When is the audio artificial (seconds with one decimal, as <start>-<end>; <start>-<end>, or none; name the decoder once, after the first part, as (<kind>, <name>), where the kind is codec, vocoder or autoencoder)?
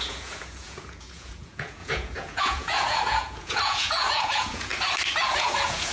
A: 0.0-4.7 (vocoder, Vocos); 5.3-5.9